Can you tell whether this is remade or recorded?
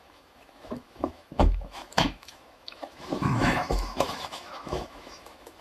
remade